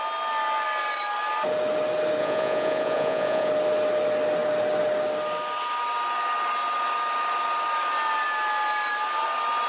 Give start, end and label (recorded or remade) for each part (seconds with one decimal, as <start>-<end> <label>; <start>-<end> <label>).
0.0-2.2 recorded; 2.2-3.5 remade; 3.5-9.7 recorded